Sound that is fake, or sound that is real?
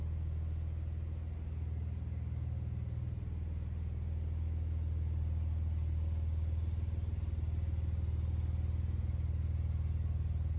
real